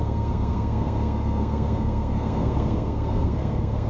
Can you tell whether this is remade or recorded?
remade